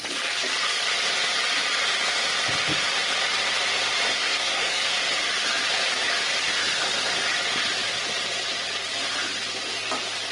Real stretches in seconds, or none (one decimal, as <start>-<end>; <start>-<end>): 0.0-4.1; 4.8-10.3